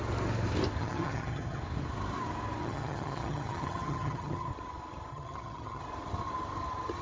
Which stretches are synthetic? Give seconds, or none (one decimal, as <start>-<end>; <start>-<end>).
0.8-1.6; 2.6-4.5; 5.1-5.8